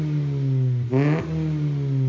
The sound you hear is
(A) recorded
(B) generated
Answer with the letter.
A